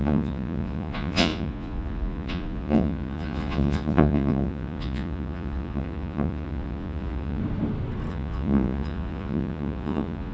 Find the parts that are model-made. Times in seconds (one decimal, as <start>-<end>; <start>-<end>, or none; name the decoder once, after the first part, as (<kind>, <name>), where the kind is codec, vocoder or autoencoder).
0.0-7.4 (vocoder, Vocos); 8.1-10.3